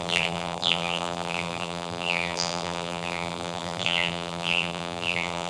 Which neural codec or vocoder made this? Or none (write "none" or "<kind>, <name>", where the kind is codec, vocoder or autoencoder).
vocoder, BigVGAN v2